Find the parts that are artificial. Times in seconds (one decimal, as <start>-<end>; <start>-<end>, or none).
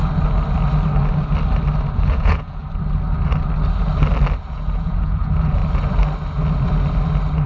1.9-2.6; 4.4-5.6